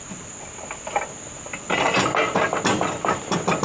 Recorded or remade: recorded